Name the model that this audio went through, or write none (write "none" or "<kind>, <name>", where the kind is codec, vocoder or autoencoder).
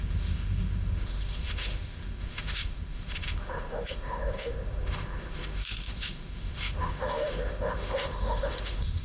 autoencoder, DAC-VAE